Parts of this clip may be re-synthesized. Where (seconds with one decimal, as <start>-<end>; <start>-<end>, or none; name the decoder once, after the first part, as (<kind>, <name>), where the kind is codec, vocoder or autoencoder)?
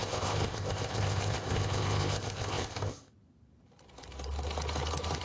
0.0-3.1 (codec, ZipCodec)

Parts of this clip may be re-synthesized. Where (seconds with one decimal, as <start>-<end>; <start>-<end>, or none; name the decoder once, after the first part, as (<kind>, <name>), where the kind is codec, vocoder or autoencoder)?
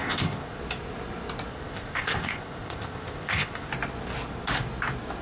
0.0-0.6 (codec, ZipCodec); 1.5-3.7